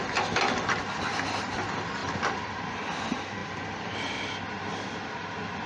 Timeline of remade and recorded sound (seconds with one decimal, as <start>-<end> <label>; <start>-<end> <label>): 0.0-2.0 recorded; 2.0-2.7 remade; 2.7-3.4 recorded; 3.4-4.0 remade; 4.0-5.7 recorded